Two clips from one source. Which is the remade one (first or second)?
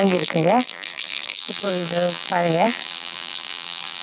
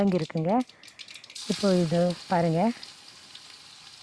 first